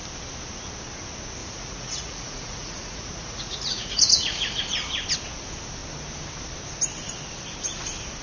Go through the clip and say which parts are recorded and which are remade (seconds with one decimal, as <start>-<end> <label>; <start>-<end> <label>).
0.0-1.4 recorded; 1.4-4.6 remade; 4.6-8.2 recorded